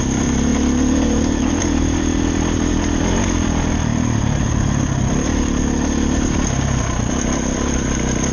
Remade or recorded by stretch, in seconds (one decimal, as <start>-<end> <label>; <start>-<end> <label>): 0.0-0.5 remade; 0.5-1.8 recorded; 1.8-8.3 remade